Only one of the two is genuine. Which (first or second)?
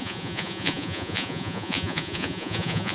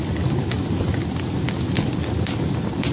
second